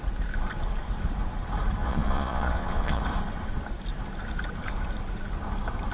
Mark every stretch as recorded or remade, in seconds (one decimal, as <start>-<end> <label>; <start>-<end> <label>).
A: 0.0-1.8 recorded; 1.8-3.0 remade; 3.0-5.9 recorded